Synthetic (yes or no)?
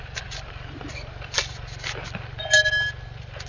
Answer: no